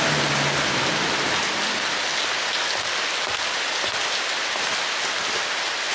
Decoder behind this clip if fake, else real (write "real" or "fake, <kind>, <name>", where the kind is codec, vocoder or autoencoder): real